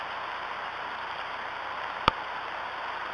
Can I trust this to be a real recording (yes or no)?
yes